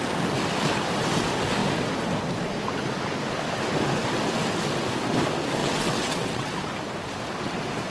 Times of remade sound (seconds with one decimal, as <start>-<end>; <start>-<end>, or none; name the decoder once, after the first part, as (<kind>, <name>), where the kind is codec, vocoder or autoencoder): 5.6-6.5 (vocoder, WaveNeXt)